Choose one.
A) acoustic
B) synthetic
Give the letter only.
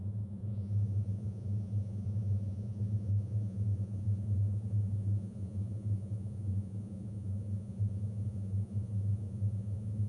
B